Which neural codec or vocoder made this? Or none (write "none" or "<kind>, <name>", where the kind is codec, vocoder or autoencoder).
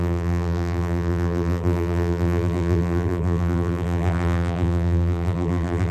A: vocoder, BigVGAN v2